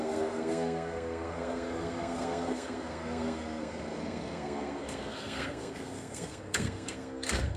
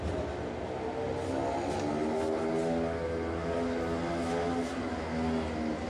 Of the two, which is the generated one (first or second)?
first